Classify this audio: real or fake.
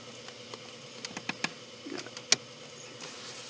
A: real